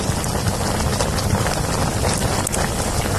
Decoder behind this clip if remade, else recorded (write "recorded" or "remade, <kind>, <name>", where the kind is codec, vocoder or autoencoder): recorded